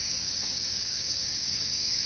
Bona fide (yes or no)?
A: no